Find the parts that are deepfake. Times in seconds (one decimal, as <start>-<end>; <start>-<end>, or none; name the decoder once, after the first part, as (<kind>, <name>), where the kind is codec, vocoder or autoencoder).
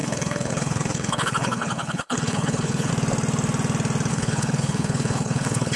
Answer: 0.0-2.9 (codec, HILCodec); 4.1-5.8